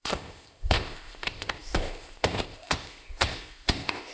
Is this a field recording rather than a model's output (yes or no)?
no